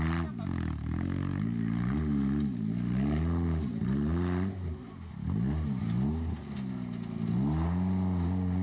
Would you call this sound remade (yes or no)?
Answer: no